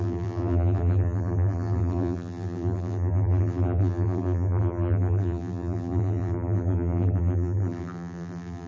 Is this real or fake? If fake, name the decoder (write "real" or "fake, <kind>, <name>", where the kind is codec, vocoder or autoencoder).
fake, vocoder, BigVGAN v2